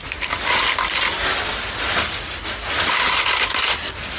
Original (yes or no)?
yes